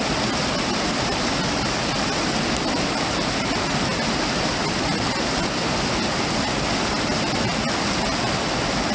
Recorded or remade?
recorded